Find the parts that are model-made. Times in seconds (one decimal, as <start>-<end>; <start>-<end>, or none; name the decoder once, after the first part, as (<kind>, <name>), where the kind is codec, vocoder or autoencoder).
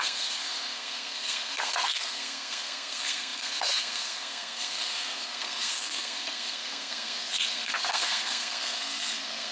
0.0-9.5 (codec, SNAC)